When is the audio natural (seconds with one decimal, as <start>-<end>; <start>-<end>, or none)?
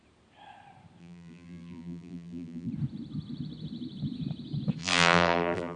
0.0-1.0; 2.7-4.8